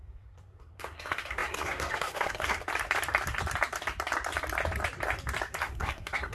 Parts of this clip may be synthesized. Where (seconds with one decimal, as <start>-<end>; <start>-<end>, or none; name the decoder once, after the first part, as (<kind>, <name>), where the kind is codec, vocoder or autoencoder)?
0.0-2.6 (codec, SNAC); 5.6-6.3